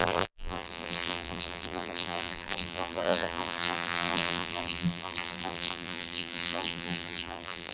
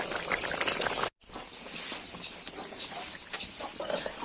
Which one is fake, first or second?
first